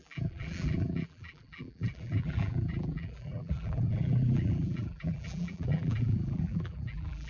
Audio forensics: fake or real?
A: fake